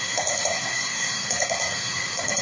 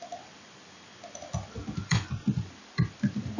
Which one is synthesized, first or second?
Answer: first